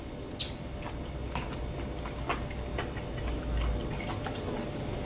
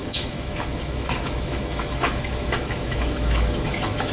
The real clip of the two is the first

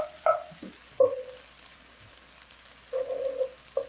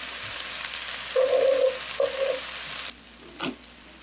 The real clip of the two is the first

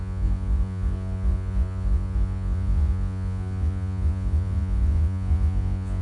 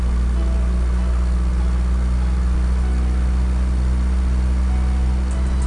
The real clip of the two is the second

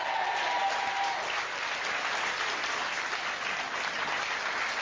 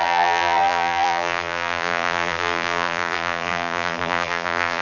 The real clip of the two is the first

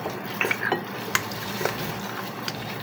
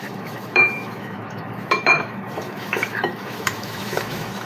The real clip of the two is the first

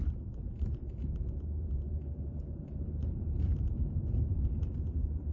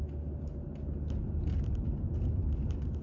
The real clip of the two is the second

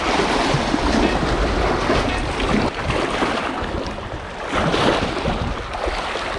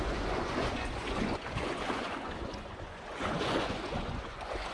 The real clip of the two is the first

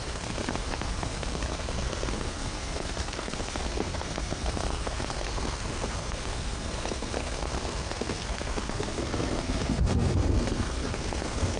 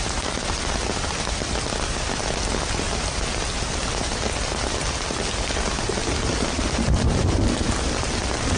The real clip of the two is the second